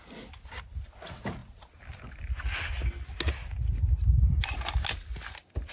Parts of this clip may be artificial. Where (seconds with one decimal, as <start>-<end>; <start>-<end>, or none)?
none